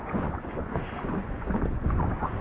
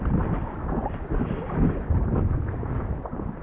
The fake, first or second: first